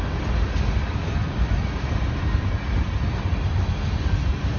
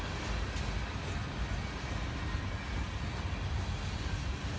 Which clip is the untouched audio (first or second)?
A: second